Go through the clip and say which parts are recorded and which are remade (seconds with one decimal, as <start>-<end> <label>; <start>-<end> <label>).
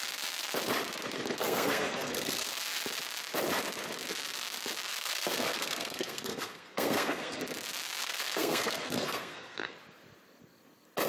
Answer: 0.0-1.4 recorded; 1.4-2.6 remade; 2.6-4.9 recorded; 4.9-7.4 remade; 7.4-8.0 recorded; 8.0-9.8 remade; 9.8-11.1 recorded